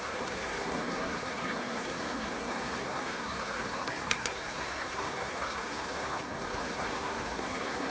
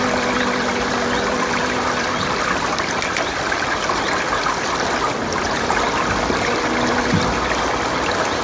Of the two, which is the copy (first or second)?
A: first